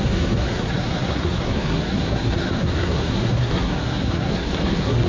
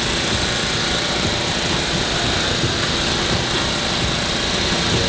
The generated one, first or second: first